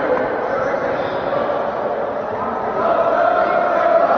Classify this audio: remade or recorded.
recorded